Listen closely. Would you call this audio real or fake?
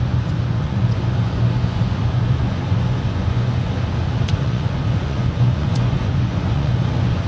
fake